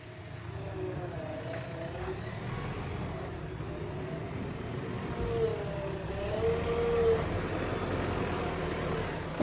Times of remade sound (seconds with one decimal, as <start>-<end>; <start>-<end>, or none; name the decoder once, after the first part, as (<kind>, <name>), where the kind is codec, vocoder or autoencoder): none